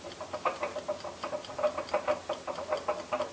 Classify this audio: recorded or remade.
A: recorded